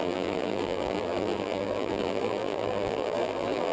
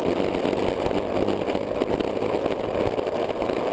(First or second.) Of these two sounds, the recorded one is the second